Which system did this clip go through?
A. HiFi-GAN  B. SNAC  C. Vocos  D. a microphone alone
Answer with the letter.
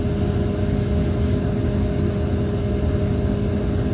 D